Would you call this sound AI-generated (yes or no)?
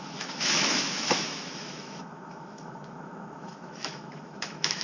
yes